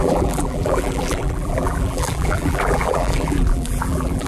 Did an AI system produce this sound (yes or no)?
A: yes